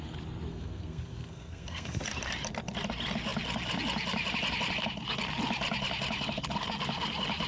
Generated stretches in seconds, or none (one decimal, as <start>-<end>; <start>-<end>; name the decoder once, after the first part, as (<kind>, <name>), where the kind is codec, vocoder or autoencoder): 0.5-2.0 (codec, SNAC)